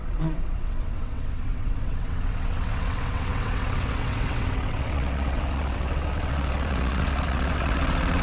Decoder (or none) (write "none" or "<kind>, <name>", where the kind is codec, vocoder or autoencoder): vocoder, WaveNeXt